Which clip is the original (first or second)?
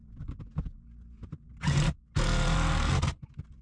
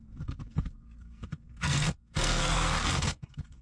first